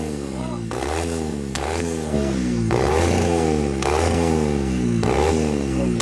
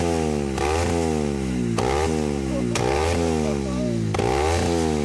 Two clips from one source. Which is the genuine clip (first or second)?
second